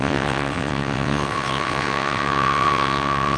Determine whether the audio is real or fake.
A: fake